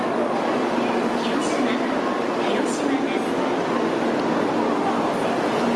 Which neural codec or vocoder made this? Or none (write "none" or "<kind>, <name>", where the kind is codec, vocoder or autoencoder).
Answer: none